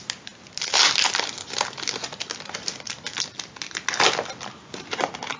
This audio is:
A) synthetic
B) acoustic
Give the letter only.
B